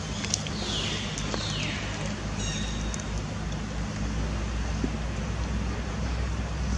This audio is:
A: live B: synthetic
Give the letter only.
A